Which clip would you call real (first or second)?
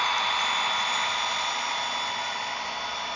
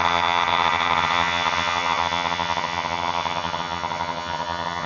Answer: first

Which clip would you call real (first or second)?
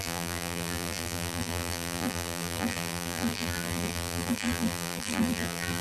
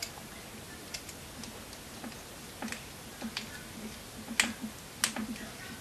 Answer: second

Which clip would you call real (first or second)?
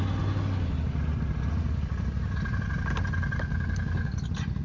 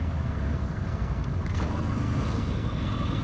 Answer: first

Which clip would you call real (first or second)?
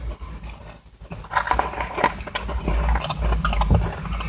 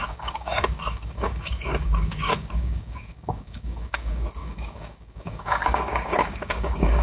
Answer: first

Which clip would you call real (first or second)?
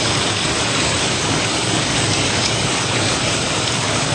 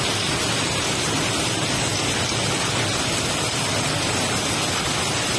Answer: second